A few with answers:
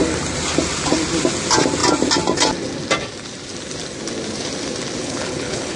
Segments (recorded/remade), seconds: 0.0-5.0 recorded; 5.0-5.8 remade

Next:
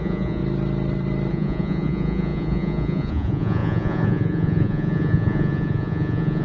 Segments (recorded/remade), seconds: 0.0-0.4 remade; 0.4-1.3 recorded; 1.3-6.4 remade

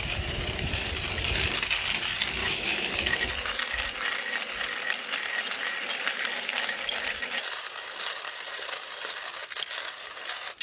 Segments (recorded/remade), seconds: 0.0-2.4 recorded; 2.4-3.3 remade; 3.3-10.6 recorded

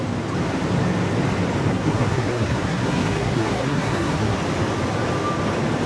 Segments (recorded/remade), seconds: 0.0-1.7 recorded; 1.7-4.4 remade; 4.4-5.9 recorded